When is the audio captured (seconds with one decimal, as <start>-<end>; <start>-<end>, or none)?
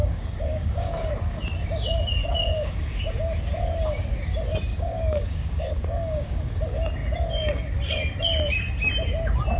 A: 1.1-2.2; 3.1-4.7; 6.6-9.6